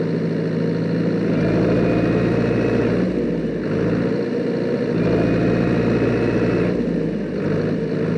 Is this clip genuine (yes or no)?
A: yes